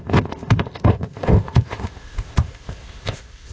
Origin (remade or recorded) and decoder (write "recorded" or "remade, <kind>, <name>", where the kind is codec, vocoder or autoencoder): remade, codec, ZipCodec